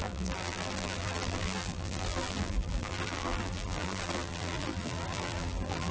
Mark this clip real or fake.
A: fake